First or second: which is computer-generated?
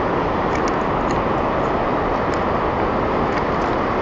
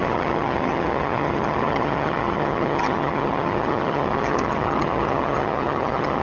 second